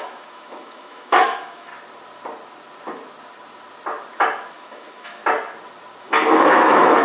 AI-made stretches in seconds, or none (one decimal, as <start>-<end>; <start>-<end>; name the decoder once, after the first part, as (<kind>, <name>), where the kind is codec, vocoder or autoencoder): 0.0-1.7 (autoencoder, DAC-VAE); 4.5-5.2; 6.0-7.0